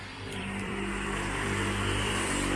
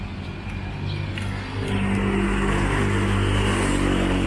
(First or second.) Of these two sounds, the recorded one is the second